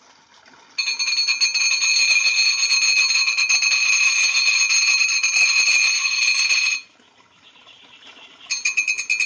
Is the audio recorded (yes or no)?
yes